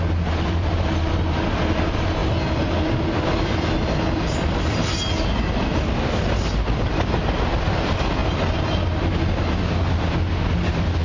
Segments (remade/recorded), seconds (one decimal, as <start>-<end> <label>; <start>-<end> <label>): 0.0-11.0 recorded